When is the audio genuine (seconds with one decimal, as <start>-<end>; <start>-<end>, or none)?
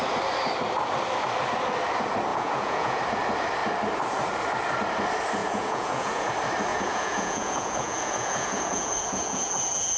0.0-2.3; 3.0-5.4; 6.3-6.7